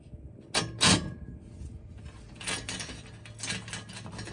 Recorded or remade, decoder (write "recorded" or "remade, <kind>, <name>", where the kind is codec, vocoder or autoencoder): recorded